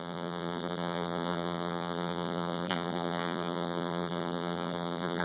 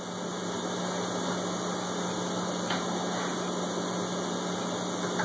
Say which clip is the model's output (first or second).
first